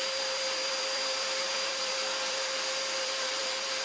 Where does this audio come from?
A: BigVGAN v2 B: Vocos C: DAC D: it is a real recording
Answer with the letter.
A